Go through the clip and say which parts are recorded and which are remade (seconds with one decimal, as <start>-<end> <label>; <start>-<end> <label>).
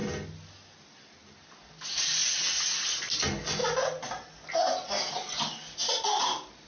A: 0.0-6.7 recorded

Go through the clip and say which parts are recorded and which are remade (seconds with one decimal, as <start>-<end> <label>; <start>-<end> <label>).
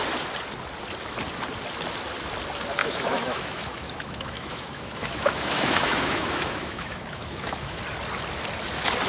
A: 0.0-2.8 recorded; 2.8-7.8 remade; 7.8-9.1 recorded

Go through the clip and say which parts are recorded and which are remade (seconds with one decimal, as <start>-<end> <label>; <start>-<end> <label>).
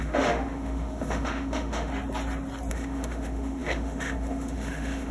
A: 0.0-1.9 remade; 1.9-2.7 recorded; 2.7-5.1 remade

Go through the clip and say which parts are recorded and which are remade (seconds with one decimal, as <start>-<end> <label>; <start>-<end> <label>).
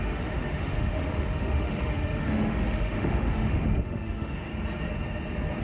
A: 0.0-4.5 remade; 4.5-5.6 recorded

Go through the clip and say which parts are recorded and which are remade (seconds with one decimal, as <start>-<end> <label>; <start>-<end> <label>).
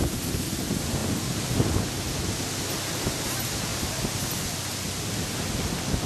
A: 0.0-6.1 recorded